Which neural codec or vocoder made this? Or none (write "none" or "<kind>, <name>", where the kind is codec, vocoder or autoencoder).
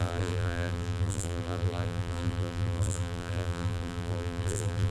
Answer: vocoder, BigVGAN v2